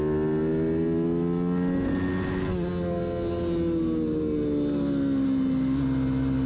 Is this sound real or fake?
real